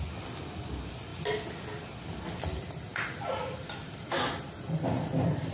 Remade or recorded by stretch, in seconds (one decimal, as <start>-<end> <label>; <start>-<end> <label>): 0.0-5.5 recorded